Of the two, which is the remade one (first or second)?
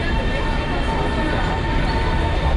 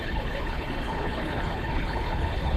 second